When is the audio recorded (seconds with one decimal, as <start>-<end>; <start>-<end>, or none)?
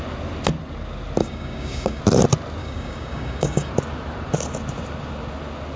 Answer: 0.0-1.2; 2.0-2.6; 3.7-5.8